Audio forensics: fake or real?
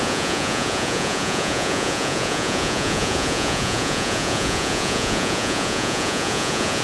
fake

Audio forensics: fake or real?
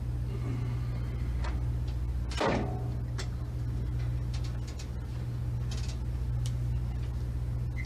real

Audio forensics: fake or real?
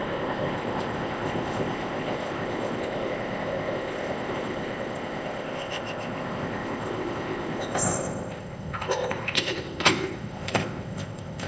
fake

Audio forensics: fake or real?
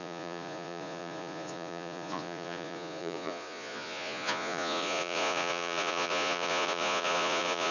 fake